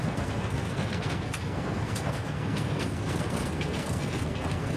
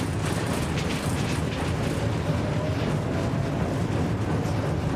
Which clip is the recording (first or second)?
second